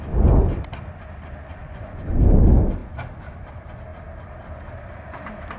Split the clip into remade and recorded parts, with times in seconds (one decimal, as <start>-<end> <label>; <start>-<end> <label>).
0.0-1.6 recorded; 1.6-2.2 remade; 2.2-5.6 recorded